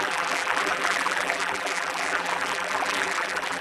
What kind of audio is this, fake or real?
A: fake